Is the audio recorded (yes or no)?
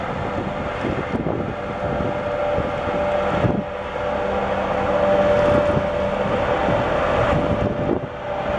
yes